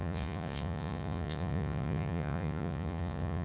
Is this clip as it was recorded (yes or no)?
no